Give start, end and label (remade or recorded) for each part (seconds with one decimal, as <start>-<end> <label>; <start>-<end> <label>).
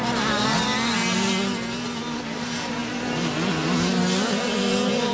0.0-5.1 recorded